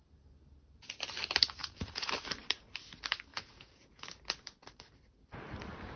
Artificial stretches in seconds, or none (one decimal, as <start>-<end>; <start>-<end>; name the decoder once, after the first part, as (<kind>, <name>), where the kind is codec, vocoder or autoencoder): 1.6-2.1 (vocoder, Vocos); 3.3-4.0